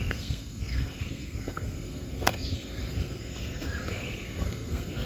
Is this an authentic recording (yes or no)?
no